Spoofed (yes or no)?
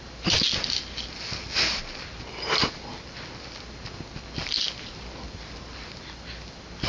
no